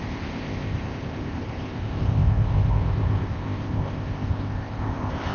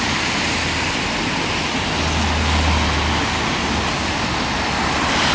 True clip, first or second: second